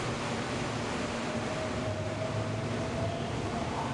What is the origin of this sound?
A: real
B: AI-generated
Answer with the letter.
A